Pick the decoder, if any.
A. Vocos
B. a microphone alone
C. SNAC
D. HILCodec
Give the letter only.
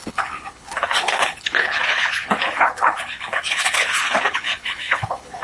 D